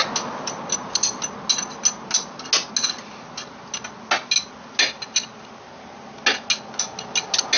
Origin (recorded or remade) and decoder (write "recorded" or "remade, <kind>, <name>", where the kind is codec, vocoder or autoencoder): recorded